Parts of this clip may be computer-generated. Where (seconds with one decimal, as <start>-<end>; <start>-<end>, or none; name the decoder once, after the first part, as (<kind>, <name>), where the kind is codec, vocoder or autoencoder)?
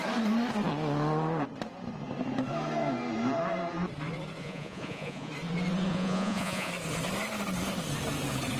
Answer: 4.4-5.3 (vocoder, Vocos); 5.9-6.7